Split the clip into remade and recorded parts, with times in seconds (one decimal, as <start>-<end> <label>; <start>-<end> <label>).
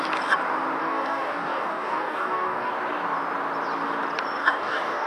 0.0-0.8 recorded; 0.8-2.7 remade; 2.7-4.4 recorded; 4.4-5.1 remade